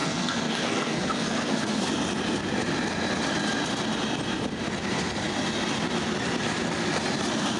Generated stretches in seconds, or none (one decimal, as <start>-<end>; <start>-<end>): 0.0-1.9